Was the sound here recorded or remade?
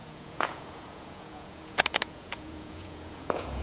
remade